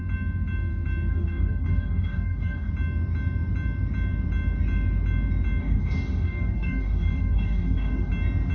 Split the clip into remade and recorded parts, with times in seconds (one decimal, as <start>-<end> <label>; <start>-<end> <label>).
0.0-1.1 recorded; 1.1-2.7 remade; 2.7-5.6 recorded; 5.6-8.1 remade; 8.1-8.5 recorded

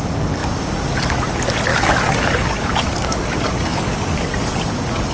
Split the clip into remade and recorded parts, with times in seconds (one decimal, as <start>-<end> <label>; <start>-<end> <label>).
0.0-1.7 recorded; 1.7-4.5 remade; 4.5-5.1 recorded